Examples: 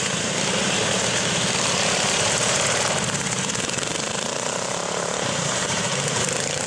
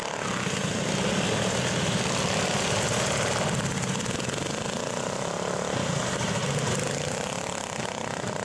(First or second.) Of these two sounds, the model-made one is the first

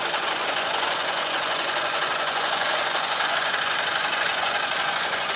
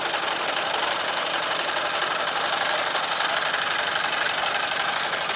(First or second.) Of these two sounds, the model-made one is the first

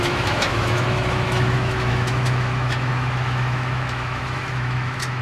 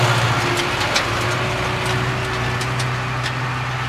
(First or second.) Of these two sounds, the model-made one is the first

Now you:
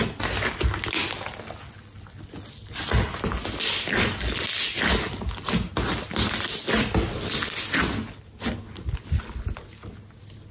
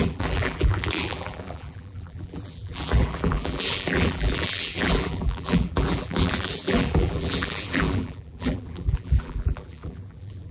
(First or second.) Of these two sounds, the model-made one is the second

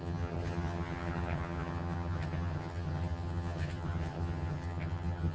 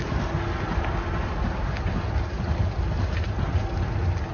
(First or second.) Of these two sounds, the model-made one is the first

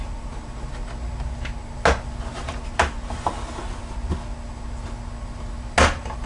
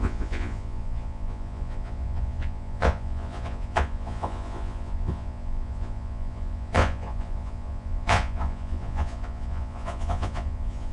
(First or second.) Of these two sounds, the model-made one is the second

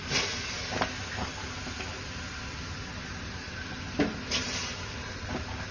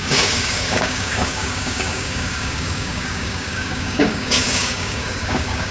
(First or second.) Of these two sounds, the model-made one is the second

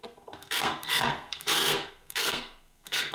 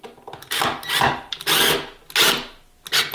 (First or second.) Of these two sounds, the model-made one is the first